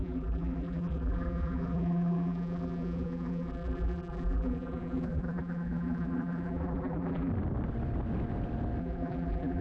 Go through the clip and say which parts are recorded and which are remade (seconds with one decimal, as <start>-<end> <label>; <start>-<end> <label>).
0.0-7.3 remade; 7.3-8.8 recorded; 8.8-9.6 remade